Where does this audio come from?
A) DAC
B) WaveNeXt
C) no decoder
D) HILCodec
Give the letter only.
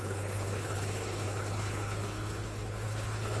D